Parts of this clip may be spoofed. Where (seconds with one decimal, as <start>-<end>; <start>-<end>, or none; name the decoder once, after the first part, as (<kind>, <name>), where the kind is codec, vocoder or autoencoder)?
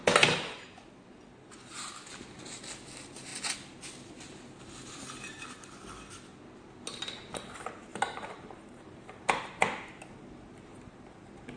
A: 7.9-9.4 (vocoder, BigVGAN v2)